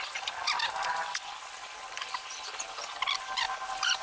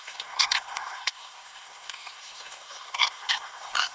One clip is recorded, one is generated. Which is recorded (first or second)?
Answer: first